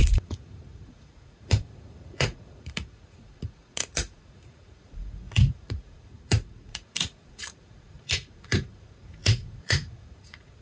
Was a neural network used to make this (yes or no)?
yes